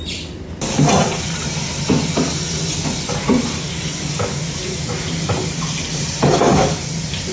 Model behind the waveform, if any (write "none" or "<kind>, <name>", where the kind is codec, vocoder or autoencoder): none